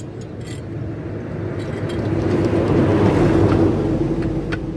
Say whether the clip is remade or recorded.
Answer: recorded